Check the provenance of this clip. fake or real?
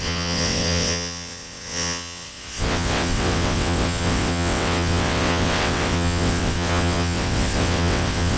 fake